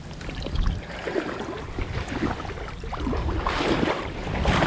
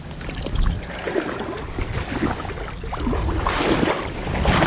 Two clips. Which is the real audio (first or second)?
second